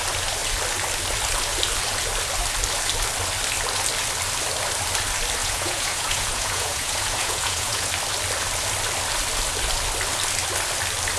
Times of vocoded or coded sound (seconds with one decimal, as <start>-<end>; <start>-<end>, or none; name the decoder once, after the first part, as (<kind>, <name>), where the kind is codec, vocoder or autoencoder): 5.4-7.9 (vocoder, Vocos)